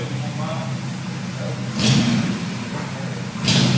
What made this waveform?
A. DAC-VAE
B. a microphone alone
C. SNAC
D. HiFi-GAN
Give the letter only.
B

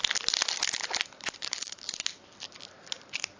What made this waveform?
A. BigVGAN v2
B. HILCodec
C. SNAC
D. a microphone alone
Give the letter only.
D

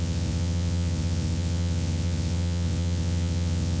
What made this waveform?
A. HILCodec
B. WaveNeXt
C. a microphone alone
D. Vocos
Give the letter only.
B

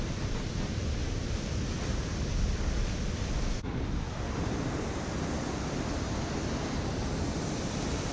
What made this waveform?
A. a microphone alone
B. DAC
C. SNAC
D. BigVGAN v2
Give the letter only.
A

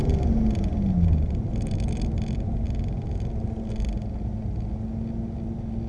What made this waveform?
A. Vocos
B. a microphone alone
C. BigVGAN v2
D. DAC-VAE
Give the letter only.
B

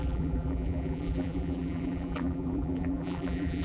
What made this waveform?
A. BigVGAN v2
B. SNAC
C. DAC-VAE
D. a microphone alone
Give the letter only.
A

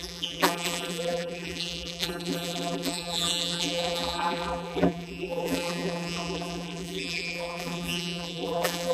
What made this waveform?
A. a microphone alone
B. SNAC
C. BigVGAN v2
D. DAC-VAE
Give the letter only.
C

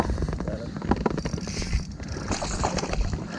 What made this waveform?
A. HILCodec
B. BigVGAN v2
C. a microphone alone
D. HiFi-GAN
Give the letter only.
C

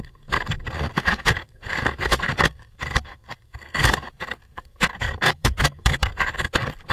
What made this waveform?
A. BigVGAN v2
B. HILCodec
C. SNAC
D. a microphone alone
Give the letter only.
C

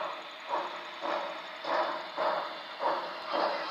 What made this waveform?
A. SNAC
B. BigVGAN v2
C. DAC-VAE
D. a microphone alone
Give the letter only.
D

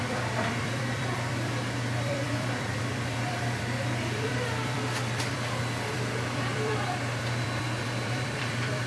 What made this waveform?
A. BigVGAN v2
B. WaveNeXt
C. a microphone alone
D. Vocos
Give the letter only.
A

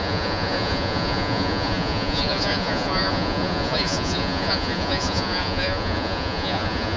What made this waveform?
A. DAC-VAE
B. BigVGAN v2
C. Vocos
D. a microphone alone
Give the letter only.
C